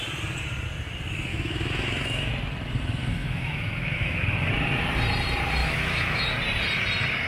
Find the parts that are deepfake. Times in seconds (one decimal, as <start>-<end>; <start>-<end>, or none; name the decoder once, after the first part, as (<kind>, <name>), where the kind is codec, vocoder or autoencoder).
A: 1.3-2.3 (autoencoder, DAC-VAE); 3.2-4.5; 5.6-6.2